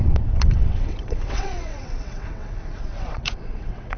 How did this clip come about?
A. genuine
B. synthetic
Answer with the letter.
B